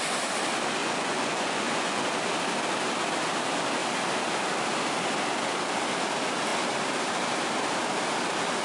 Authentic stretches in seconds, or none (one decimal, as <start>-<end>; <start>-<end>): 0.0-0.8; 2.0-8.6